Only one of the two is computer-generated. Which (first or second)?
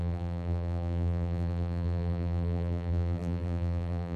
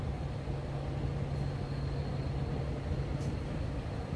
first